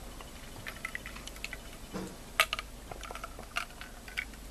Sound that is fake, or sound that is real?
real